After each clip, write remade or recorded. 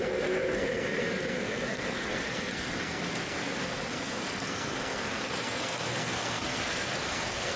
remade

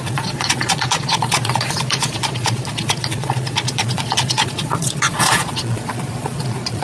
remade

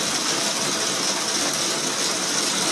recorded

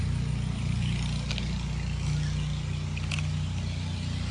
recorded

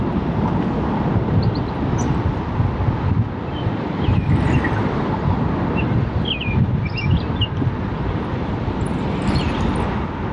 recorded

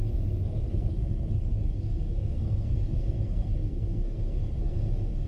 remade